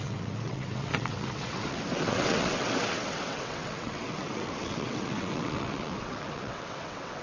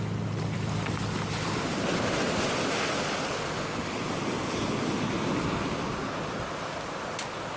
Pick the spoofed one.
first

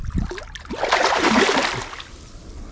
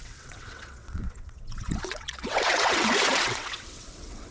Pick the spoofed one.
second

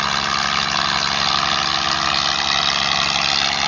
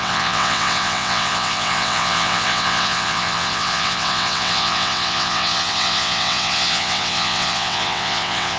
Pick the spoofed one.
second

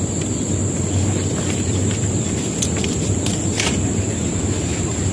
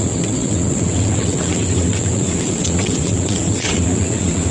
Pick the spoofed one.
second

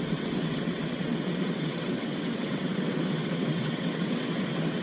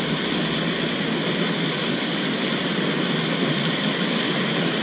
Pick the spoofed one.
first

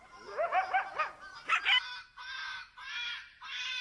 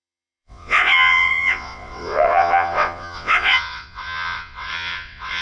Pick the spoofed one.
second